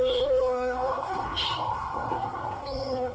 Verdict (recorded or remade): remade